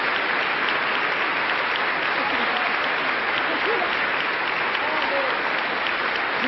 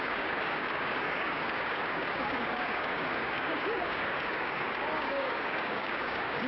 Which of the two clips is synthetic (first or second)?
second